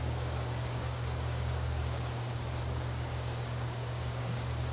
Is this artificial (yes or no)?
yes